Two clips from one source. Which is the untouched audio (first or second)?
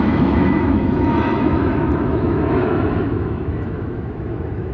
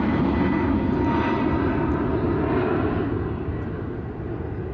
second